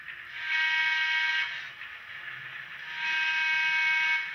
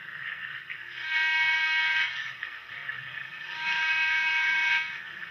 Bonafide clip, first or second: first